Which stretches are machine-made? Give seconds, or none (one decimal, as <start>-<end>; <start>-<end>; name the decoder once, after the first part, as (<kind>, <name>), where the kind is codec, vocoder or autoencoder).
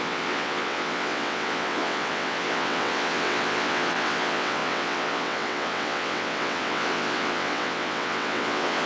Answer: 0.0-8.9 (vocoder, WaveNeXt)